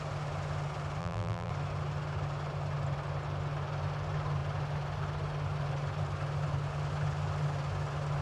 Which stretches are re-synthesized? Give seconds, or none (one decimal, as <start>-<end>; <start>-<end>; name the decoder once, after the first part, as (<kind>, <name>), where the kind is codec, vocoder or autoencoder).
1.0-1.5 (vocoder, BigVGAN v2)